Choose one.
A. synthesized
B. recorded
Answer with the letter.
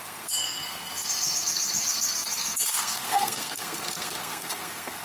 A